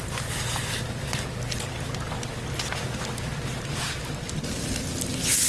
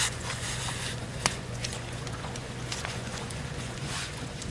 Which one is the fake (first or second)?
second